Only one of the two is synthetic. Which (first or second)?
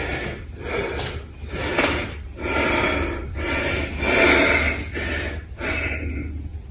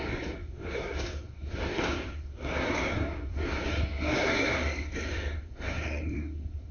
second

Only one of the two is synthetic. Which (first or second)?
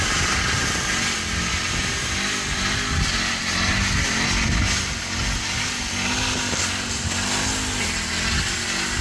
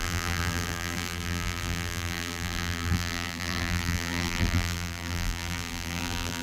second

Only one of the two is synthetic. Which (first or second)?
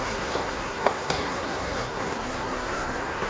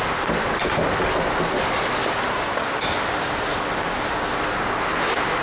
first